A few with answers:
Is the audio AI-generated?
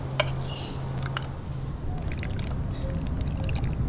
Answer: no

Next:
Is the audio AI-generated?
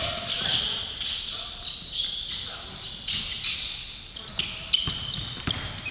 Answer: no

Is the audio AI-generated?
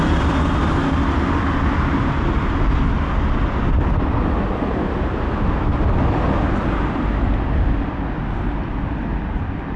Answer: no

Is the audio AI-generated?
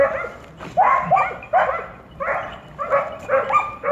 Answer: no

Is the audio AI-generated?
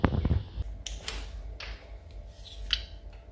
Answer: no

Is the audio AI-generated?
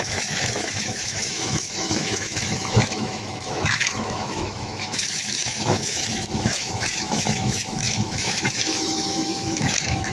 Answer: yes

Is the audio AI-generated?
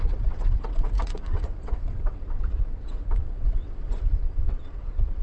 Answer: yes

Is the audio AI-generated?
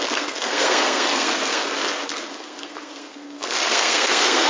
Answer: yes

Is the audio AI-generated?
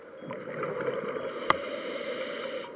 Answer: no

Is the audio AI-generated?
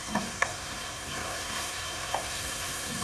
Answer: yes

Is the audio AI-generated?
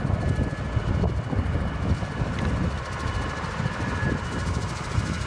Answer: no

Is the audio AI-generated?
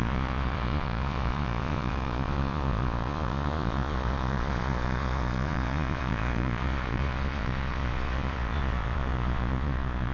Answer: yes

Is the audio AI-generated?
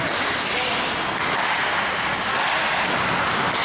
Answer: no